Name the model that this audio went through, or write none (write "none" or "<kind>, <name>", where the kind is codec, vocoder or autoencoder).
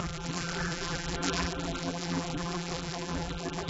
vocoder, BigVGAN v2